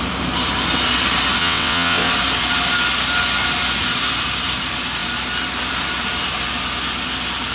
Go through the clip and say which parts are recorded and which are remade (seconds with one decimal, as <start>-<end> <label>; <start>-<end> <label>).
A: 0.0-1.4 recorded; 1.4-2.1 remade; 2.1-7.5 recorded